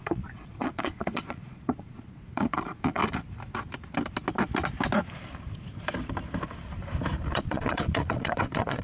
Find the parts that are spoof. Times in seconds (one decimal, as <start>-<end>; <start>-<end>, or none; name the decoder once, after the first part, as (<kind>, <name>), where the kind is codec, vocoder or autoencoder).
0.0-3.0 (vocoder, Vocos); 7.3-8.8